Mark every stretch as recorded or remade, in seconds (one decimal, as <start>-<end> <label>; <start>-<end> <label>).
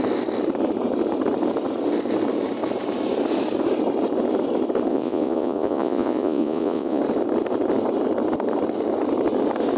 0.0-4.9 recorded; 4.9-7.0 remade; 7.0-9.8 recorded